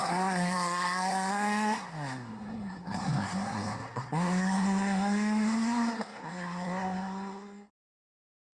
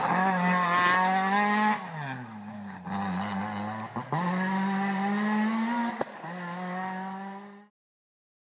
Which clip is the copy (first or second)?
first